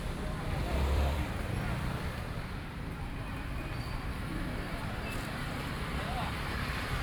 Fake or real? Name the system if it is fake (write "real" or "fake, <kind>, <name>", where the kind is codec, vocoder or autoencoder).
fake, vocoder, BigVGAN v2